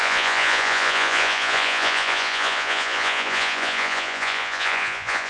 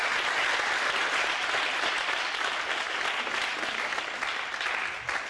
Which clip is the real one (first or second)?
second